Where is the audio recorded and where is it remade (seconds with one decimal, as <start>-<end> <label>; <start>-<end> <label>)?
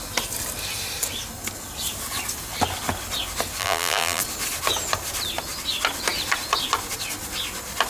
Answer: 0.0-3.6 recorded; 3.6-4.2 remade; 4.2-7.9 recorded